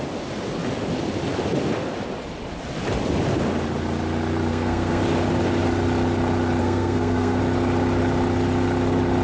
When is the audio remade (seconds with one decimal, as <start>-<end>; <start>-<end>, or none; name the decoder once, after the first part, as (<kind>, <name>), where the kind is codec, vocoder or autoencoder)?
4.5-5.0 (codec, SNAC); 6.6-7.4